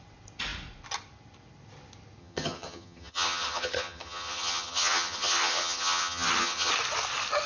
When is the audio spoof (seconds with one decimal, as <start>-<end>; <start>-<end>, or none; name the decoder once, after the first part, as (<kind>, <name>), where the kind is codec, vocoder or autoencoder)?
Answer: 2.2-6.7 (vocoder, HiFi-GAN)

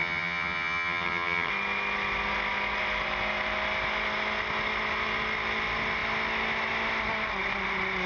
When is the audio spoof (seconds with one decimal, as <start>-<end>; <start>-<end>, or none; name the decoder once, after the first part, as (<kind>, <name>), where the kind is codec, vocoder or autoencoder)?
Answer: 0.0-1.5 (vocoder, HiFi-GAN)